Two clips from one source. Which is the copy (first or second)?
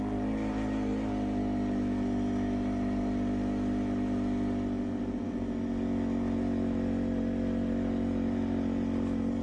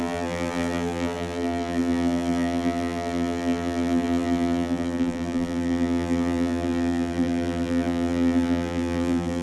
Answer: second